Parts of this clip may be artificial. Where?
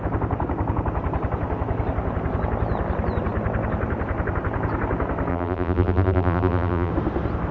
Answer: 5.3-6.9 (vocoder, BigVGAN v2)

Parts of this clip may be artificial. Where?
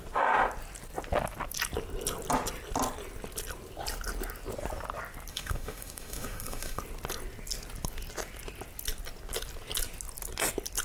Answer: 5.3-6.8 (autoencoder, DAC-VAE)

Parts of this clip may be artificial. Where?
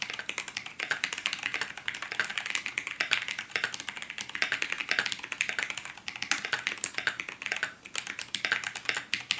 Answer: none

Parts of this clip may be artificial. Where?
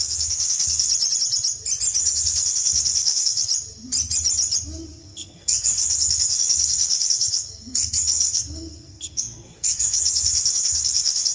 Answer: 0.0-0.9 (codec, SNAC); 2.0-3.5; 5.0-11.3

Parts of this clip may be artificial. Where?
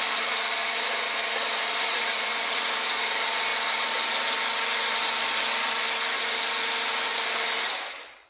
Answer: 1.9-2.7 (vocoder, Vocos)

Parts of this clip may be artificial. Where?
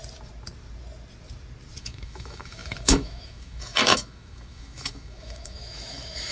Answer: 1.8-6.3 (autoencoder, DAC-VAE)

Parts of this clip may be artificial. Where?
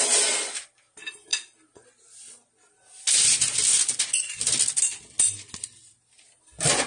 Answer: none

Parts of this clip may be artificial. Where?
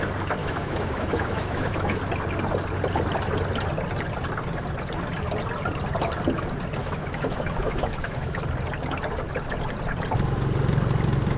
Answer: 0.4-2.0 (autoencoder, DAC-VAE); 6.8-8.4